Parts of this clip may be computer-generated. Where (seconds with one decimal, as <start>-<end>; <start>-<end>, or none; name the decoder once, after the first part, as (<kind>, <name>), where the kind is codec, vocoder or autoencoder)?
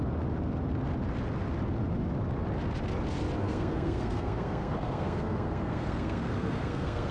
3.4-7.1 (codec, SNAC)